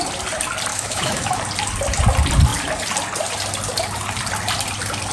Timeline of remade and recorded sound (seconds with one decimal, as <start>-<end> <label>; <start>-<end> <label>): 0.0-0.7 recorded; 0.7-1.4 remade; 1.4-5.1 recorded